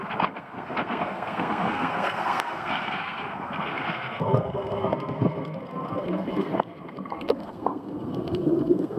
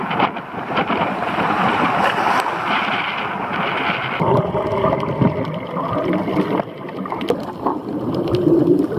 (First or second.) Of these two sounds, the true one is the second